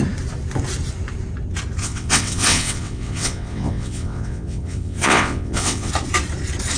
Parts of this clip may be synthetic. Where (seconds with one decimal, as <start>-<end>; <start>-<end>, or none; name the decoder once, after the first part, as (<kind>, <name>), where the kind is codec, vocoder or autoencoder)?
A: 1.8-5.9 (vocoder, WaveNeXt)